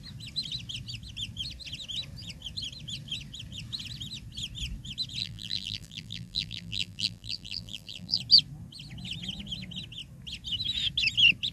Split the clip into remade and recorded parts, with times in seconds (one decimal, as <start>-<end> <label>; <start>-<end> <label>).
0.0-5.2 recorded; 5.2-8.2 remade; 8.2-11.5 recorded